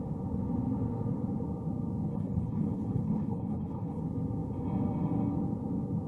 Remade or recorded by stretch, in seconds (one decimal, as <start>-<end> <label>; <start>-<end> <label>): 0.0-2.1 recorded; 2.1-4.0 remade; 4.0-6.1 recorded